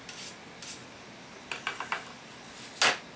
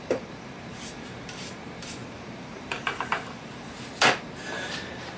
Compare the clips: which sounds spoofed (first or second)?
second